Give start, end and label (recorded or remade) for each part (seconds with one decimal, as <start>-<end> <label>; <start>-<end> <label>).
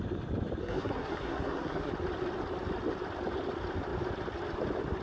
0.0-0.6 recorded; 0.6-1.9 remade; 1.9-5.0 recorded